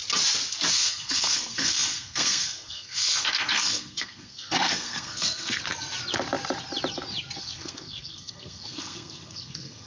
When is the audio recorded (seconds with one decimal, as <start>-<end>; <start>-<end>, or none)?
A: 0.0-0.7; 5.6-7.4